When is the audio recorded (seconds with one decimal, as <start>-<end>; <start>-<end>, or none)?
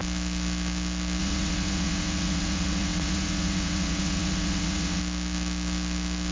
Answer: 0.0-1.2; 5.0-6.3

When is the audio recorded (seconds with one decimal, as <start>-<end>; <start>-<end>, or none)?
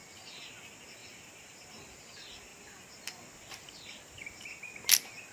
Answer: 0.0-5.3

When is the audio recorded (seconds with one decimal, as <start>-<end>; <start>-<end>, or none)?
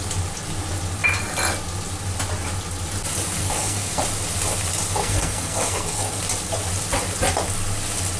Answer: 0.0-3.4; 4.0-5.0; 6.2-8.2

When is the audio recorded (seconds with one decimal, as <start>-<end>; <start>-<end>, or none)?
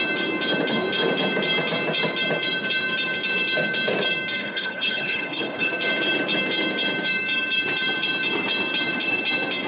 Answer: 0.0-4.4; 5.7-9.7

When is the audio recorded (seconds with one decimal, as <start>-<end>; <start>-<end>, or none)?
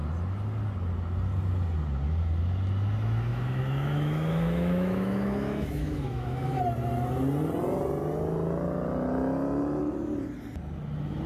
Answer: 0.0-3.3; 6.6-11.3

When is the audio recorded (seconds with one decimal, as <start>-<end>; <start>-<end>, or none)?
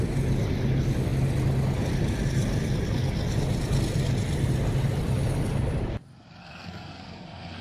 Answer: 0.0-6.4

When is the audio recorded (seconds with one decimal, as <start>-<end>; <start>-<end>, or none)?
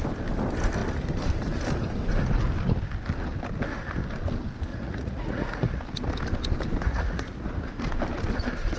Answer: 0.0-4.7; 5.8-6.9; 7.9-8.8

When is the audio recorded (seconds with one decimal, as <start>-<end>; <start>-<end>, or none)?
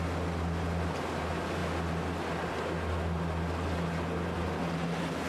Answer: 0.0-5.3